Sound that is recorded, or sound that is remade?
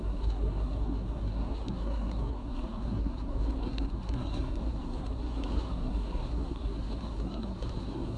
remade